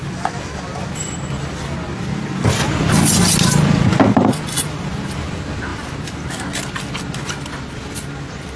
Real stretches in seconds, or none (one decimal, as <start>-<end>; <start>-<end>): 0.0-8.6

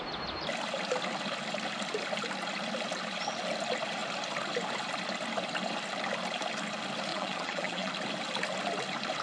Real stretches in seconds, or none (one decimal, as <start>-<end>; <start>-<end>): 0.0-7.1; 7.9-9.2